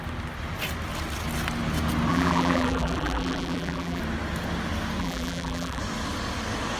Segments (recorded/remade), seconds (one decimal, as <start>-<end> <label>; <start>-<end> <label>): 0.0-2.1 recorded; 2.1-4.0 remade; 4.0-5.0 recorded; 5.0-5.8 remade; 5.8-6.8 recorded